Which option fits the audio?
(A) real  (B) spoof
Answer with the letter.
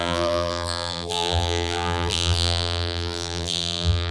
B